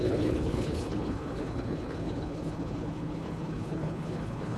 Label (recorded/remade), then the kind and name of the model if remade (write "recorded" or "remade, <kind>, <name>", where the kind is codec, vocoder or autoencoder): remade, codec, HILCodec